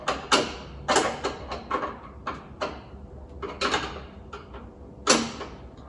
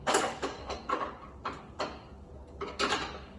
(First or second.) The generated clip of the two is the second